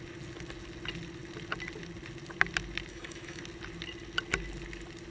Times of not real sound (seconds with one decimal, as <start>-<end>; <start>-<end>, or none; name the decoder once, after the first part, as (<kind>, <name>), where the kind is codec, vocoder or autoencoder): 2.9-3.4 (autoencoder, DAC-VAE)